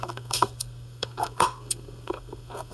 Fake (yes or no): yes